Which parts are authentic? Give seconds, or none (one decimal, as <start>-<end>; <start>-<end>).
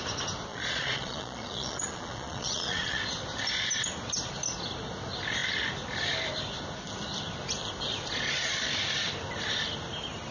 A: 0.0-0.5; 3.0-10.3